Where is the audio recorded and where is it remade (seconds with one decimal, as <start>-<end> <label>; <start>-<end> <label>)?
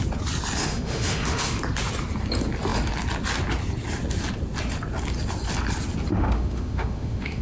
0.0-0.6 recorded; 0.6-1.6 remade; 1.6-6.1 recorded; 6.1-7.4 remade